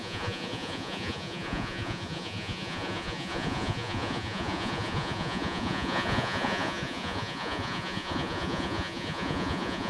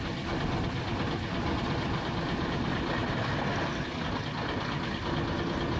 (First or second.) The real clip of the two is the second